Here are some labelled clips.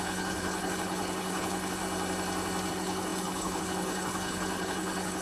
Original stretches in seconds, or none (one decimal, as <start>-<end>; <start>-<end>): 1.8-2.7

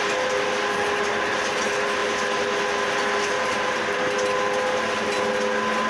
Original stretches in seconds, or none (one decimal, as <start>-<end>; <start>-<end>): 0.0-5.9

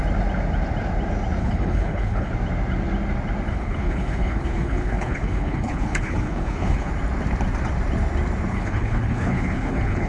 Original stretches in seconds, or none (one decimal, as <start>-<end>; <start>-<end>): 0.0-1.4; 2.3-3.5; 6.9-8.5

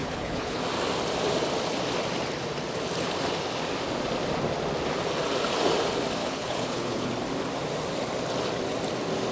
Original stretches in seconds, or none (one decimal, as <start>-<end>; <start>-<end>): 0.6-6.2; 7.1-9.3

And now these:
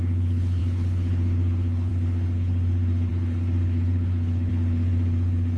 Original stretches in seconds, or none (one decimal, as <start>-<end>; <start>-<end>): none